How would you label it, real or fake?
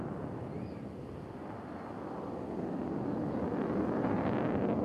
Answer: real